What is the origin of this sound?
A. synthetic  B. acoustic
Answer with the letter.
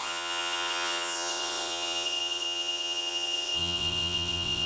A